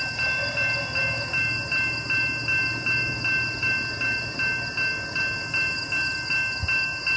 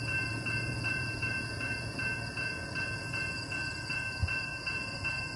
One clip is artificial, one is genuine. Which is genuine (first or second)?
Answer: first